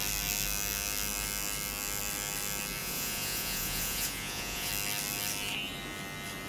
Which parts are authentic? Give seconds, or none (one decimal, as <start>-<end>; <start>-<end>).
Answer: 0.0-2.8; 4.7-6.5